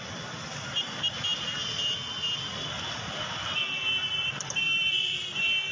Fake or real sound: real